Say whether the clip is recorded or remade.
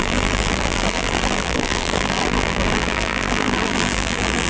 remade